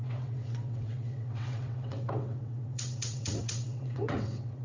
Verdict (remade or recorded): remade